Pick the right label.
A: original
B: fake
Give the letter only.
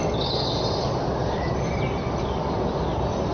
A